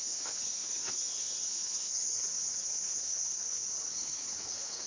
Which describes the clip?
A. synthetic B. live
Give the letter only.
A